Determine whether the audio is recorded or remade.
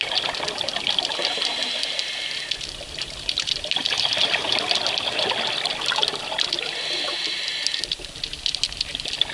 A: recorded